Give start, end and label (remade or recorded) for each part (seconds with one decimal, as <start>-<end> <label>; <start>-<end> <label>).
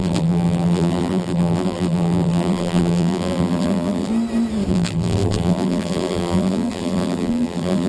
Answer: 0.0-4.1 remade; 4.1-4.7 recorded; 4.7-7.9 remade